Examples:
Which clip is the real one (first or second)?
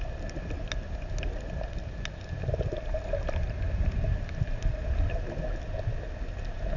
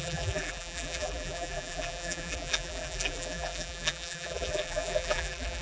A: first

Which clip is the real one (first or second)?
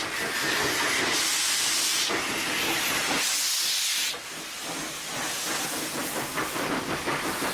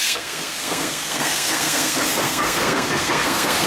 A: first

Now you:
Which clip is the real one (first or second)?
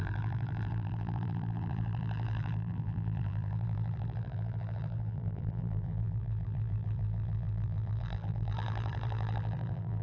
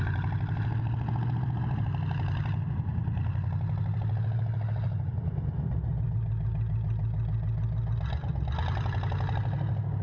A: second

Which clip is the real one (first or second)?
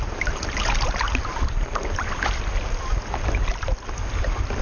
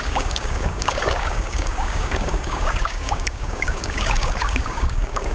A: first